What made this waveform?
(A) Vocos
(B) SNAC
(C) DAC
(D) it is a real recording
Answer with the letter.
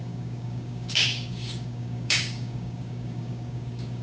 C